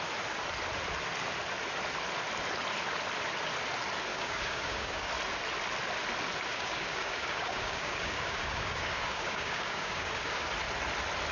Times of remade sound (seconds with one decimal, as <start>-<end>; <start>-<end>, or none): 4.1-5.1; 6.5-10.5